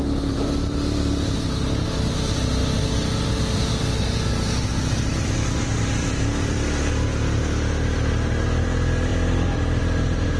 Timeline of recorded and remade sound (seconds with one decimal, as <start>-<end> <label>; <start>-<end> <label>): 0.0-2.6 recorded; 2.6-3.9 remade; 3.9-5.1 recorded; 5.1-5.6 remade; 5.6-6.0 recorded; 6.0-6.9 remade; 6.9-9.1 recorded; 9.1-9.8 remade; 9.8-10.4 recorded